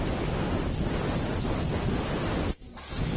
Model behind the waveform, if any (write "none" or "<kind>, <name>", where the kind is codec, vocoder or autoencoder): none